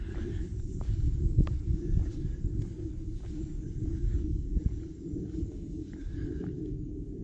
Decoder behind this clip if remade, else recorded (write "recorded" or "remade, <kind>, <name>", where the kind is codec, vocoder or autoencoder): remade, codec, DAC